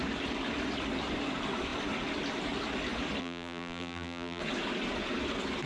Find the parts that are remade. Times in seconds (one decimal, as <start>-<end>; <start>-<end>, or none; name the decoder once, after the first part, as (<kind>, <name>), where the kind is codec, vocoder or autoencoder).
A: 3.2-4.4 (vocoder, BigVGAN v2)